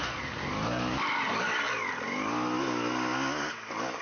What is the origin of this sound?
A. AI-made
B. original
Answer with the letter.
B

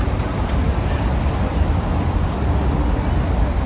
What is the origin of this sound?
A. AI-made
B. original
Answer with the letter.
B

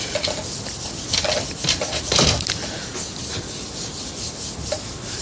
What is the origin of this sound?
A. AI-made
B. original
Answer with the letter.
B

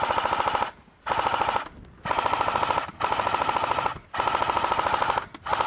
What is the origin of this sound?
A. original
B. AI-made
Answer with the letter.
A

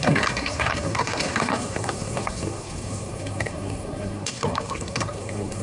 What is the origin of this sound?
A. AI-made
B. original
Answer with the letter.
A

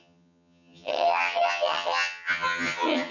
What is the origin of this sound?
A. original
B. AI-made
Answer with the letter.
B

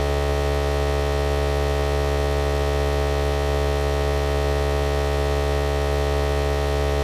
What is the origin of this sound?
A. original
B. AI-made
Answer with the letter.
A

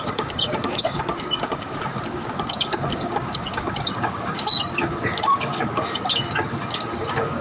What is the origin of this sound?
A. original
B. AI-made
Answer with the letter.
B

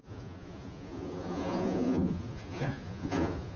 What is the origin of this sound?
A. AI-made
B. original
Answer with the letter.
A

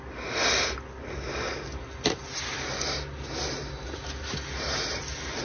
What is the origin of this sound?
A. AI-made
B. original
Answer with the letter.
B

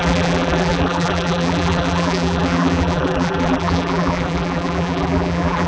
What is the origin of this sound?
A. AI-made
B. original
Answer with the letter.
A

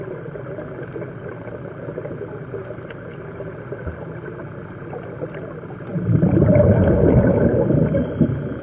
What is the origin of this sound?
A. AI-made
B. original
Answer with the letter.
B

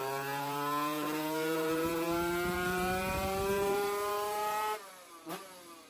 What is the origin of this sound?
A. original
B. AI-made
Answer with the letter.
B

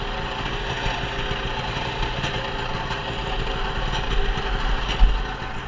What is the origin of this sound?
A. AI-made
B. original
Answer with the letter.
B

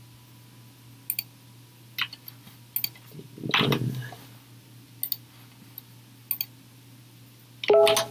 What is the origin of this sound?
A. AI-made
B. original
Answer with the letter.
B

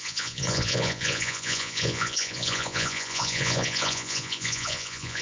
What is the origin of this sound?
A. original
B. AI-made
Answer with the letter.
B